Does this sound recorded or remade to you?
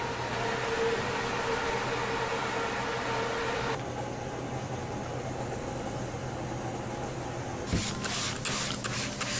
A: recorded